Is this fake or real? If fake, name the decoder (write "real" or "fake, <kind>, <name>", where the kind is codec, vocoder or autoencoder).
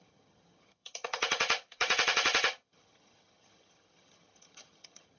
fake, vocoder, HiFi-GAN